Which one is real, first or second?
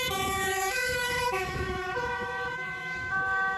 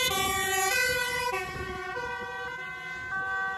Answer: second